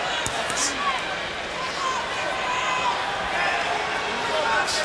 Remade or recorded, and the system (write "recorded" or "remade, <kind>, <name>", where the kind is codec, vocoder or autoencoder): recorded